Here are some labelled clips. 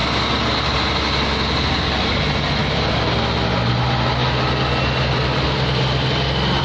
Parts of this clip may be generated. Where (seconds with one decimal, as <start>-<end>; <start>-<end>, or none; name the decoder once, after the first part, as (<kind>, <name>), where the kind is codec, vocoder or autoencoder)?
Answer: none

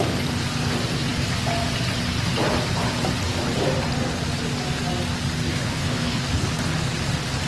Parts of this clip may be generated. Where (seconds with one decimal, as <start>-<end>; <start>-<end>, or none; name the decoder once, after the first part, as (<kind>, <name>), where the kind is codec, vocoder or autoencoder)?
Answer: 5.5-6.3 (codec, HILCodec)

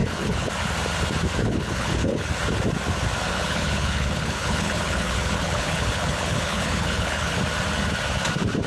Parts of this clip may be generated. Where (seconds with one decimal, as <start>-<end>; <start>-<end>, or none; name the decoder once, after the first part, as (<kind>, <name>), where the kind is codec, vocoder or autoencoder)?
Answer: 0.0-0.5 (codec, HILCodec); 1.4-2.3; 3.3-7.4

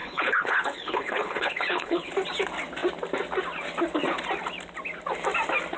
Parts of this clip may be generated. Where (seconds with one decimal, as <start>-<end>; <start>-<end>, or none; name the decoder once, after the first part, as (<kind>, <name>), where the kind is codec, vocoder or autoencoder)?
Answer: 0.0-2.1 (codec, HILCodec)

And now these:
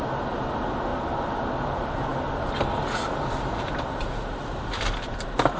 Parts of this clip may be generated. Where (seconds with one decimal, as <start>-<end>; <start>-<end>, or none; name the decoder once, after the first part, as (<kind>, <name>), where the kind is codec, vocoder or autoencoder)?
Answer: none

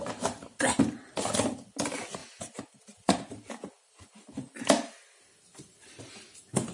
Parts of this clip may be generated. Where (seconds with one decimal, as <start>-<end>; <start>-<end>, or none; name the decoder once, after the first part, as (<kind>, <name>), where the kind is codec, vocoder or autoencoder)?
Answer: none

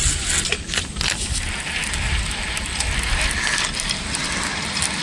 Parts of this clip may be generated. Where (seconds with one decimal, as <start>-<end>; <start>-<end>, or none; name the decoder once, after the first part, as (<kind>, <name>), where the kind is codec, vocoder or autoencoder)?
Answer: none

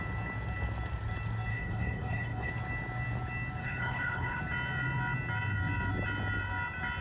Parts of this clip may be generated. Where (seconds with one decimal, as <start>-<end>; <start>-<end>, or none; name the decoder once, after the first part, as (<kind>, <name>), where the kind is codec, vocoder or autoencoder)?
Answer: 1.5-2.5 (codec, HILCodec); 3.6-4.4